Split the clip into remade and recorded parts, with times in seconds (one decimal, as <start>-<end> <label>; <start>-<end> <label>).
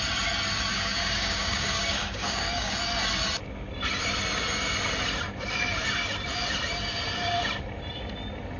0.0-0.7 recorded; 0.7-2.7 remade; 2.7-8.6 recorded